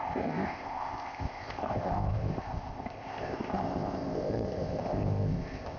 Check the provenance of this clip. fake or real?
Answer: fake